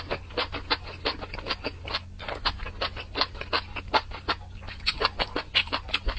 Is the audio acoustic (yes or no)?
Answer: yes